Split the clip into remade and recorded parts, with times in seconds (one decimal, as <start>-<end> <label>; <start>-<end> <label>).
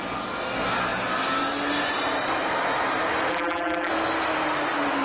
0.0-3.3 recorded; 3.3-3.9 remade; 3.9-5.0 recorded